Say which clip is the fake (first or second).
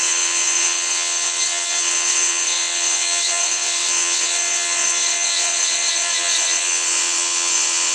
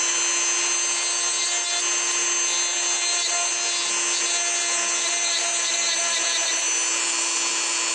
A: first